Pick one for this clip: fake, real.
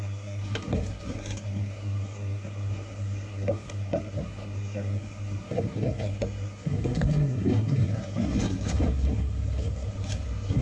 fake